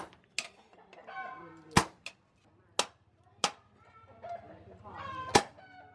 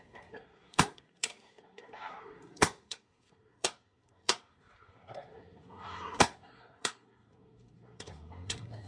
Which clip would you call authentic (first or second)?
first